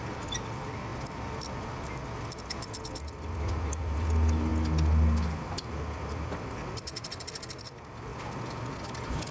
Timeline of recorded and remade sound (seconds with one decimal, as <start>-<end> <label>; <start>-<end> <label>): 0.0-9.3 recorded